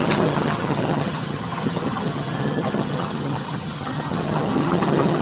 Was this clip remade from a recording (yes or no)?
yes